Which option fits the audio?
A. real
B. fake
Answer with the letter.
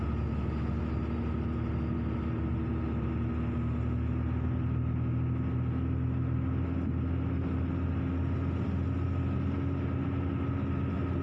A